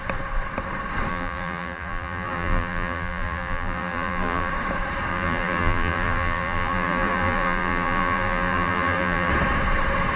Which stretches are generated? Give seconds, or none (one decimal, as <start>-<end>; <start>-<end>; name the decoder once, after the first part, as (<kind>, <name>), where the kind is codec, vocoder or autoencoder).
1.1-4.5 (vocoder, BigVGAN v2); 5.1-9.3